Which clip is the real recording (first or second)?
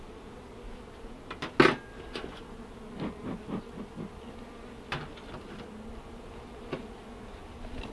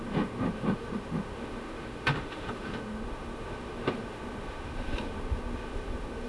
first